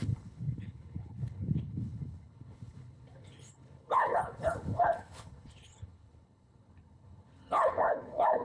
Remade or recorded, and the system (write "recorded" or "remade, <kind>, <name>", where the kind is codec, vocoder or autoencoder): remade, codec, HILCodec